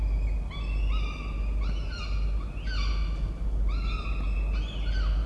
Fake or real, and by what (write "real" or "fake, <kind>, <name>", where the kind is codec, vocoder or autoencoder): real